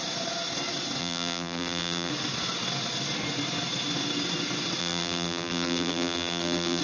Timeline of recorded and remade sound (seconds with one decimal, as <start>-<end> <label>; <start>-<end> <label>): 0.0-1.0 recorded; 1.0-2.1 remade; 2.1-4.8 recorded; 4.8-6.8 remade

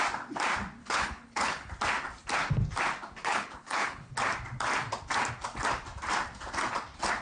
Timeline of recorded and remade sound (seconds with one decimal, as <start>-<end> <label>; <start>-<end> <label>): 0.0-0.8 recorded; 0.8-1.7 remade; 1.7-3.2 recorded; 3.2-4.1 remade; 4.1-7.2 recorded

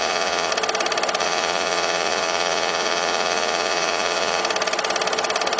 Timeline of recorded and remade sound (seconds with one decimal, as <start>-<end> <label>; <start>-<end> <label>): 0.0-0.5 remade; 0.5-1.2 recorded; 1.2-4.4 remade; 4.4-5.6 recorded

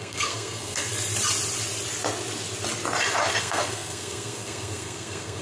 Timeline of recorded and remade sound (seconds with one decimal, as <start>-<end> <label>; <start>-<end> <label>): 0.0-0.9 remade; 0.9-3.4 recorded; 3.4-5.4 remade

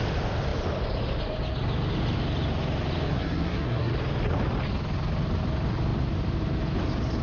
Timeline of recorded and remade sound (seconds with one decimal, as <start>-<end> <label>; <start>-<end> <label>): 0.0-3.1 recorded; 3.1-3.9 remade; 3.9-7.2 recorded

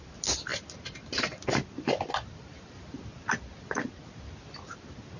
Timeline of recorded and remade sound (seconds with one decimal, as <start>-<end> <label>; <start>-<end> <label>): 0.0-5.2 recorded

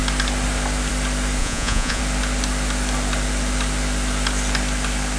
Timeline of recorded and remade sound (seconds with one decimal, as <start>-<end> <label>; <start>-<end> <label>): 0.0-1.4 recorded; 1.4-2.0 remade; 2.0-5.2 recorded